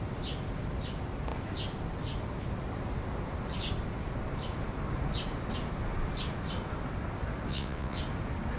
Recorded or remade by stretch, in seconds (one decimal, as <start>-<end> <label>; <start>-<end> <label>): 0.0-7.5 recorded; 7.5-8.0 remade; 8.0-8.6 recorded